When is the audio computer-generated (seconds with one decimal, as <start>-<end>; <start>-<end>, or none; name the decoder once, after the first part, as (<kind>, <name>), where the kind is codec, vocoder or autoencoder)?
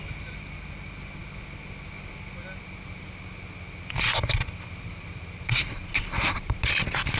none